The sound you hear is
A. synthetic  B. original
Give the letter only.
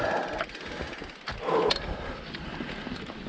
B